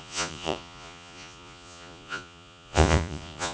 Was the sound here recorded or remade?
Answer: remade